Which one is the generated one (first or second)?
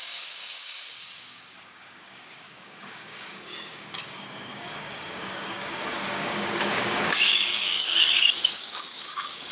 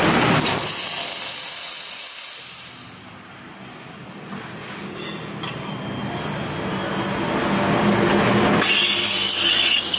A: first